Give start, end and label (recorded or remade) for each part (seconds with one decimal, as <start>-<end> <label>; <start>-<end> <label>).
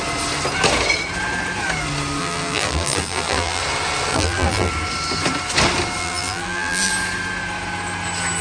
0.0-2.2 recorded; 2.2-3.6 remade; 3.6-4.1 recorded; 4.1-4.7 remade; 4.7-6.0 recorded; 6.0-6.9 remade; 6.9-8.4 recorded